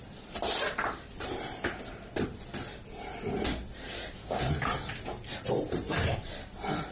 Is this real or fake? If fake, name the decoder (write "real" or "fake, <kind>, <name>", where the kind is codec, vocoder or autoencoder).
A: fake, vocoder, BigVGAN v2